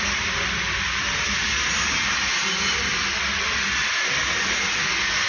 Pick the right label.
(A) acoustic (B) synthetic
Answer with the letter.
A